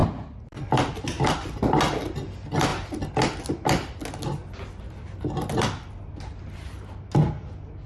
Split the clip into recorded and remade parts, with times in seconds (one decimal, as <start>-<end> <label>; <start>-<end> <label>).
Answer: 0.0-7.9 recorded